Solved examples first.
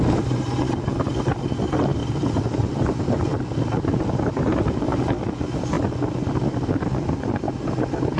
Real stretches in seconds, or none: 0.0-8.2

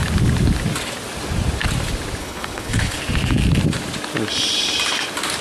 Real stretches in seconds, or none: 0.0-2.2; 3.0-5.4

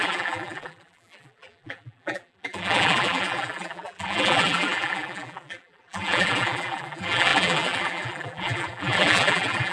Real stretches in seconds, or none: none

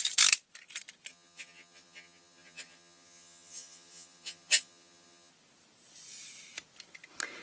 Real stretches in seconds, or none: 0.0-1.1; 5.3-7.4

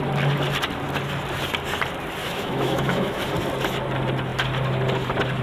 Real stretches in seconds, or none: 0.0-2.2; 3.2-5.4

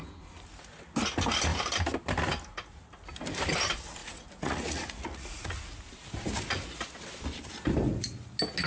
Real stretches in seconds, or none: 0.0-4.0; 5.6-8.7

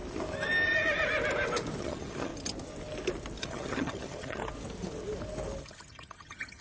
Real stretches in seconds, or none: 0.0-1.8; 2.3-3.4; 4.4-5.6